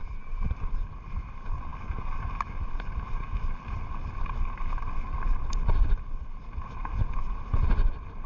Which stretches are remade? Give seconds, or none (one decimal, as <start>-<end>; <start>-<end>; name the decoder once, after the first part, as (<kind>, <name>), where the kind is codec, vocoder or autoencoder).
none

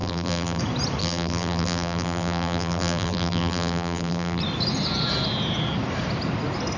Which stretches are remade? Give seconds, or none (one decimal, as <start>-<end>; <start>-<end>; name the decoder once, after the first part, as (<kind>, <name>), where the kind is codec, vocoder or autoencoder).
0.0-0.6 (vocoder, BigVGAN v2); 1.0-4.4

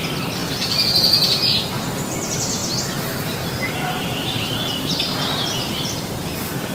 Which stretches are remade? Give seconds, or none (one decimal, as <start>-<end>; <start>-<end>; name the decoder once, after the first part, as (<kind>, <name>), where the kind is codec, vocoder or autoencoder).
2.6-6.3 (vocoder, BigVGAN v2)